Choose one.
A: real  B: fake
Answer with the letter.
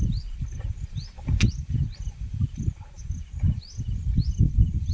A